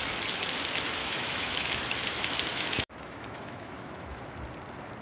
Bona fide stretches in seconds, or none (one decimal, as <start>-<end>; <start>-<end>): 0.0-1.0; 1.8-2.5; 4.2-5.0